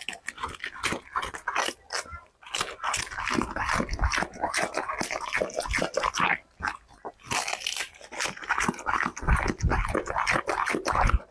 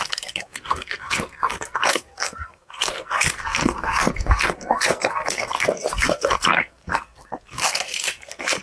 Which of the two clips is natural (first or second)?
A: first